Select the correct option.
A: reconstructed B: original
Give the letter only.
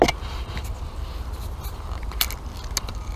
B